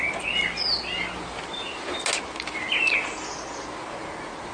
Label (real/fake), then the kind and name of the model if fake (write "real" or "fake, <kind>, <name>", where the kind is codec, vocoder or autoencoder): real